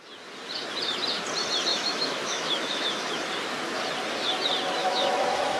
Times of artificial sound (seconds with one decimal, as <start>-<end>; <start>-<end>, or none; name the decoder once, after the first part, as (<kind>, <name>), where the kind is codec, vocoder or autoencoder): 1.7-3.2 (autoencoder, DAC-VAE); 4.8-5.6